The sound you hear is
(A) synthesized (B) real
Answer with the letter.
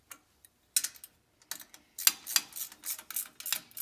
B